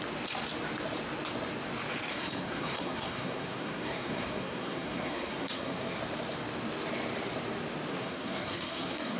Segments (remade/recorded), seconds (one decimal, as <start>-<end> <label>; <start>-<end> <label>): 0.0-2.1 recorded; 2.1-6.0 remade; 6.0-7.9 recorded; 7.9-9.2 remade